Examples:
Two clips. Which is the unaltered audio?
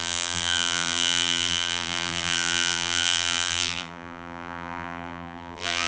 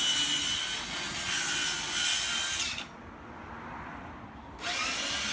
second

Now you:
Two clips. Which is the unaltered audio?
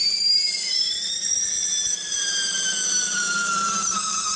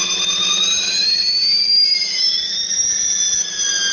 second